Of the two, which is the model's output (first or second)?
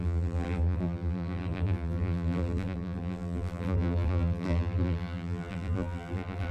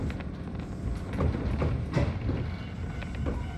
first